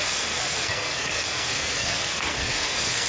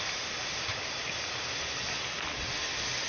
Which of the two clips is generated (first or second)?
first